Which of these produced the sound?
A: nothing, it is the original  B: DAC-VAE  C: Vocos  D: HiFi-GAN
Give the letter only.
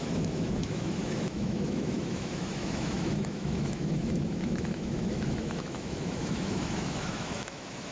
B